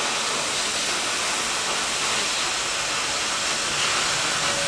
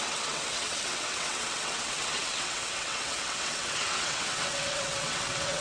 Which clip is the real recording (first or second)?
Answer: first